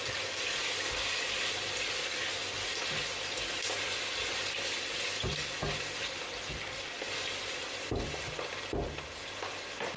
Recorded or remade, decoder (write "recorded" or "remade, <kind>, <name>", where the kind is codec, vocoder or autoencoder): recorded